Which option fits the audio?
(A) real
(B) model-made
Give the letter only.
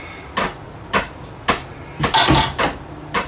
A